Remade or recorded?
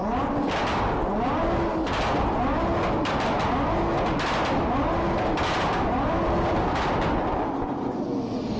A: recorded